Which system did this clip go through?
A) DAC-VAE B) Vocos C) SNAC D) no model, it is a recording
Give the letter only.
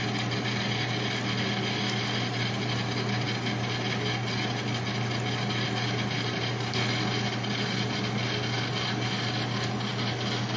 D